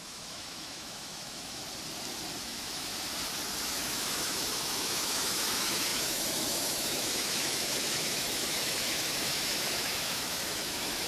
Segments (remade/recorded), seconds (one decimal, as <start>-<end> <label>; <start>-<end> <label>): 0.0-1.6 remade; 1.6-2.4 recorded; 2.4-2.9 remade; 2.9-3.6 recorded; 3.6-11.1 remade